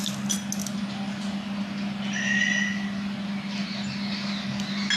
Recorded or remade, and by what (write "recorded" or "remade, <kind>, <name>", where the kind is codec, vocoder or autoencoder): recorded